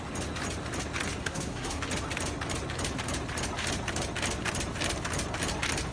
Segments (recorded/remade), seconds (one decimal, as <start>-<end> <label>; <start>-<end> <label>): 0.0-1.2 recorded; 1.2-1.8 remade; 1.8-5.9 recorded